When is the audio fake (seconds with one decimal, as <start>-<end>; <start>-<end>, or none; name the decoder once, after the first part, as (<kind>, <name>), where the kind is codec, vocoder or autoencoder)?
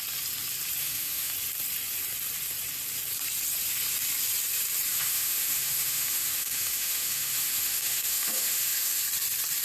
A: 0.8-1.3 (autoencoder, DAC-VAE); 4.9-9.0